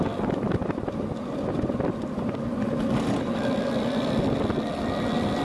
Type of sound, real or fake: real